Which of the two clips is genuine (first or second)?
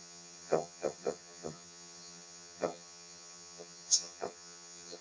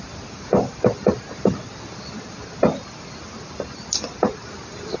second